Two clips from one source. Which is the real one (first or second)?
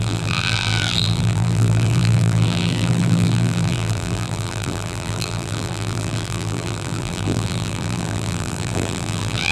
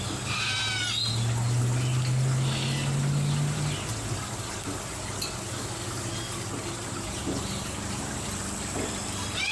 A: second